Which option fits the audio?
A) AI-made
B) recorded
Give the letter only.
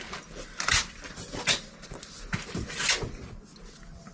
B